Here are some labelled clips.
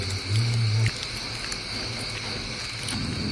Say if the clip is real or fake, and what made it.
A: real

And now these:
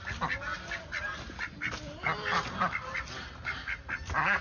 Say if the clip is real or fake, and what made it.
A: real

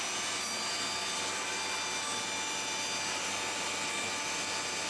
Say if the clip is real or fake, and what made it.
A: real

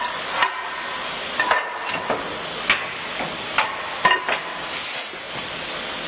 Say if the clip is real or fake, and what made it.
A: real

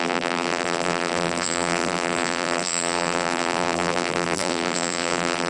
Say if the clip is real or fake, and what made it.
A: fake, vocoder, BigVGAN v2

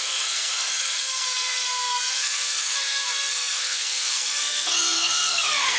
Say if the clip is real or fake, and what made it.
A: fake, codec, SNAC